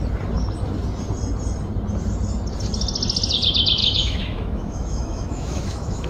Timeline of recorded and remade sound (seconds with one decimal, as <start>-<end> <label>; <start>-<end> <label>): 0.0-3.8 recorded; 3.8-6.1 remade